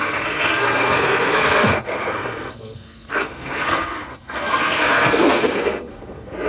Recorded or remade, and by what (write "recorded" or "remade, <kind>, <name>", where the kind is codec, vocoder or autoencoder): remade, codec, SNAC